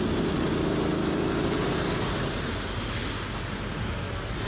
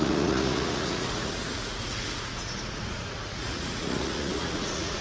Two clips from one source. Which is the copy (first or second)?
second